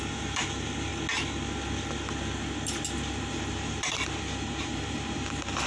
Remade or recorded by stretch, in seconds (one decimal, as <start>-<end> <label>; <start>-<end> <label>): 0.0-0.9 remade; 0.9-3.3 recorded; 3.3-5.7 remade